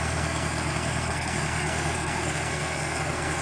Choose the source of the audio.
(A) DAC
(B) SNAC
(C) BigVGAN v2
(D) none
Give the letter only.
B